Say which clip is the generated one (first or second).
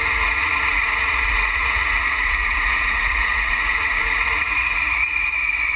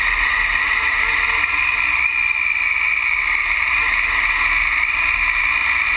first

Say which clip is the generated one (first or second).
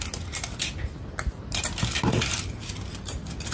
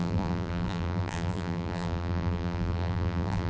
second